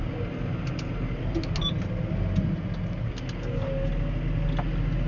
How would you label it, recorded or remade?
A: recorded